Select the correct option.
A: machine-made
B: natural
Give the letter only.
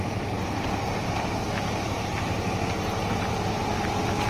B